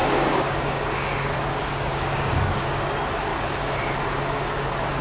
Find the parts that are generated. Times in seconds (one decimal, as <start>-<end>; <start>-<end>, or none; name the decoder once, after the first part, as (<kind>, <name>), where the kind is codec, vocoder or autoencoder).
0.0-2.9 (codec, DAC); 3.3-3.8